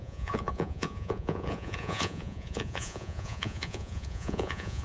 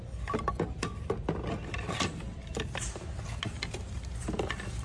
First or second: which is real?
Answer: second